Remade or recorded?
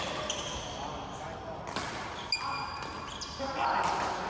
recorded